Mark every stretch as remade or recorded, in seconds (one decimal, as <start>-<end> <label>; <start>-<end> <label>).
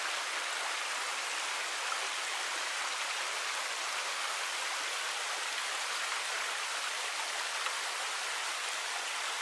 0.0-4.0 recorded; 4.0-4.5 remade; 4.5-9.4 recorded